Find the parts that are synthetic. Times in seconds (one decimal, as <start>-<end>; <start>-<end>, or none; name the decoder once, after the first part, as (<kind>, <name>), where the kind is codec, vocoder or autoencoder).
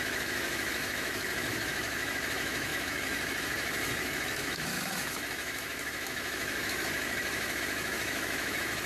0.0-8.9 (autoencoder, DAC-VAE)